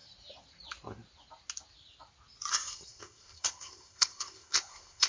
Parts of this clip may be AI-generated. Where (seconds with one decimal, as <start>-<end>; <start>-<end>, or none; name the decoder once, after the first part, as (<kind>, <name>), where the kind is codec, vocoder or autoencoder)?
2.5-5.1 (codec, ZipCodec)